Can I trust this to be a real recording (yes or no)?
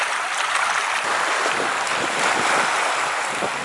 yes